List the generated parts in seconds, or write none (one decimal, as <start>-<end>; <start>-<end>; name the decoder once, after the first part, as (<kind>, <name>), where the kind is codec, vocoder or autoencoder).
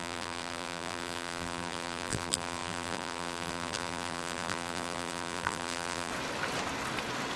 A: 0.0-6.1 (vocoder, BigVGAN v2)